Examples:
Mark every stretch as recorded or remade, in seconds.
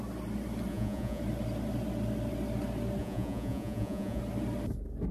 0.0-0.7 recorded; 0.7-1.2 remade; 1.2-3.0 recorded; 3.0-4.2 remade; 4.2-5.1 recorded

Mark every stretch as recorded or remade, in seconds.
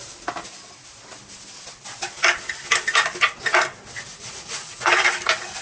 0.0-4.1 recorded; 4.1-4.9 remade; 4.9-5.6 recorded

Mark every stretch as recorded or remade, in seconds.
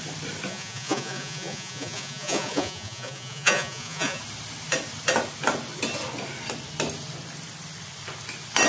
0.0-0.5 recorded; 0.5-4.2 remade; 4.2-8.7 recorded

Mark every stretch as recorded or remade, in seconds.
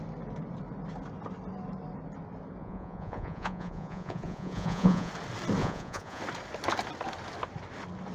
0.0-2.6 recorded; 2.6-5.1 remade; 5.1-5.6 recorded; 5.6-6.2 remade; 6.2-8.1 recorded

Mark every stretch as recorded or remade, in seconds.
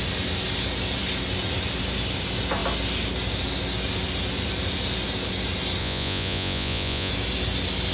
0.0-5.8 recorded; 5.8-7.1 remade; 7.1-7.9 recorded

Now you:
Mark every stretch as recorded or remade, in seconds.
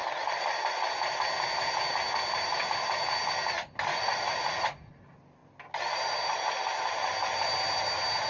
0.0-3.9 recorded; 3.9-4.9 remade; 4.9-8.3 recorded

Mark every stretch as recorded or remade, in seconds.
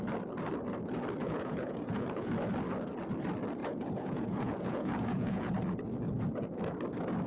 0.0-1.2 recorded; 1.2-2.3 remade; 2.3-3.6 recorded; 3.6-5.5 remade; 5.5-7.3 recorded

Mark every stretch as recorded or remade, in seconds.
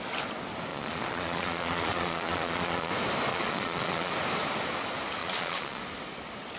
0.0-0.7 recorded; 0.7-2.9 remade; 2.9-3.3 recorded; 3.3-4.1 remade; 4.1-5.2 recorded; 5.2-5.8 remade; 5.8-6.6 recorded